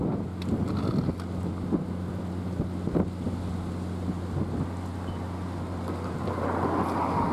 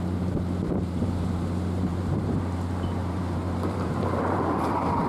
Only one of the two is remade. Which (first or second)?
second